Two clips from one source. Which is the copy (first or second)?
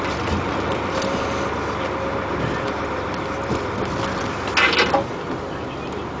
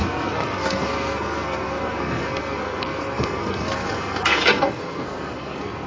second